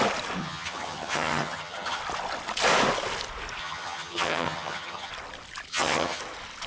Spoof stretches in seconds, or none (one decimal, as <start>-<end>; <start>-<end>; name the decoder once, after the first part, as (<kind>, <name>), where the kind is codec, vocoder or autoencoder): 0.4-2.0 (vocoder, HiFi-GAN); 3.6-5.1; 5.7-6.2